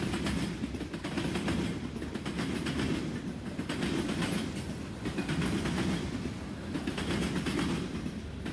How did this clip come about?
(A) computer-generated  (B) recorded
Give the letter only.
B